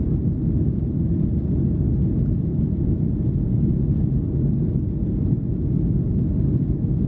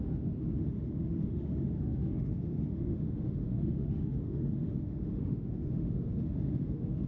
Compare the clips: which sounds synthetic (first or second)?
second